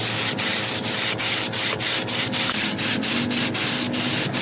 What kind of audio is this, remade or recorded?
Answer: recorded